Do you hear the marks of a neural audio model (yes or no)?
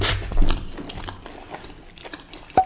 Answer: no